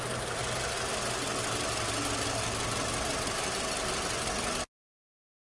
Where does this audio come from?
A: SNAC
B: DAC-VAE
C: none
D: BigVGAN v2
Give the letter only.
C